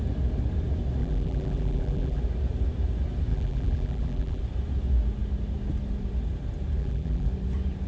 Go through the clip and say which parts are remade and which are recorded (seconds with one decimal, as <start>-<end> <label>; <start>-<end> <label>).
0.0-1.0 recorded; 1.0-2.2 remade; 2.2-3.3 recorded; 3.3-4.4 remade; 4.4-6.8 recorded; 6.8-7.3 remade; 7.3-7.9 recorded